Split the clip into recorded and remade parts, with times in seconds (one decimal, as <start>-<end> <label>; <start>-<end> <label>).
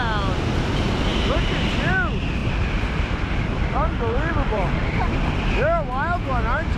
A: 0.0-1.1 recorded; 1.1-1.9 remade; 1.9-2.4 recorded; 2.4-5.0 remade; 5.0-6.8 recorded